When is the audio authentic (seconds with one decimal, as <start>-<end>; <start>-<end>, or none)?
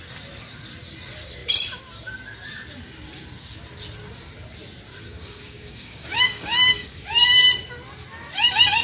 0.0-4.9; 7.0-8.8